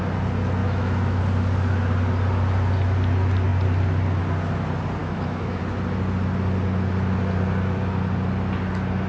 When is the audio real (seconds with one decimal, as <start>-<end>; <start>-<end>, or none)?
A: 0.0-0.6; 1.2-5.0; 5.6-9.1